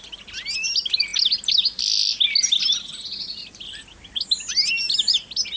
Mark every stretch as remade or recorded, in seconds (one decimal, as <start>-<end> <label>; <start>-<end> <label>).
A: 0.0-5.6 recorded